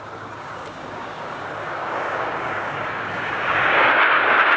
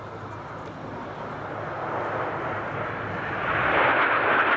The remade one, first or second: first